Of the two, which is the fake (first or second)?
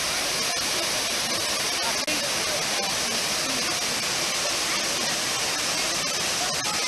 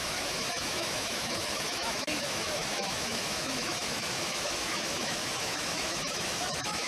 second